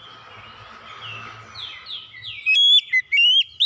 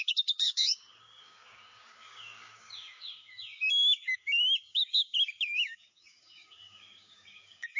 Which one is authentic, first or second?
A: first